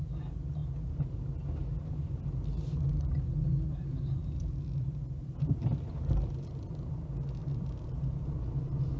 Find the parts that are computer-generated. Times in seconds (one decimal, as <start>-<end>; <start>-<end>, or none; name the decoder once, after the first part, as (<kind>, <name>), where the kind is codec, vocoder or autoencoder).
7.4-8.1 (vocoder, BigVGAN v2)